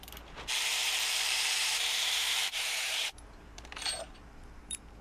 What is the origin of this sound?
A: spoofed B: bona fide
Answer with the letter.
A